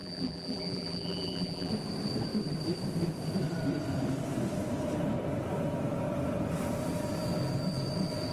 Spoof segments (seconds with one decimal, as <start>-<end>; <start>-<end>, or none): 0.0-1.7